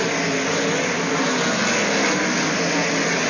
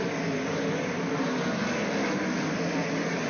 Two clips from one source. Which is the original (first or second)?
first